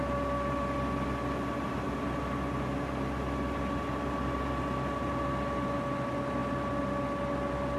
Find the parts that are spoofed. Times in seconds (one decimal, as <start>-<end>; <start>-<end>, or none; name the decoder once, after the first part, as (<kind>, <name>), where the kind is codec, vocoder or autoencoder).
none